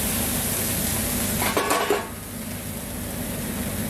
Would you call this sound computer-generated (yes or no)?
no